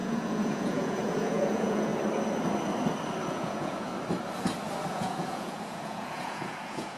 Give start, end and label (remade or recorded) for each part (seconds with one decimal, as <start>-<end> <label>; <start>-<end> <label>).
0.0-1.9 remade; 1.9-3.3 recorded; 3.3-3.9 remade; 3.9-4.9 recorded; 4.9-7.0 remade